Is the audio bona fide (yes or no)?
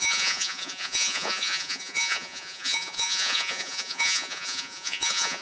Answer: no